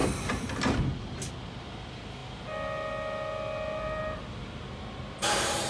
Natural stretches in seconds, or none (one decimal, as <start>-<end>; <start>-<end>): 0.0-5.7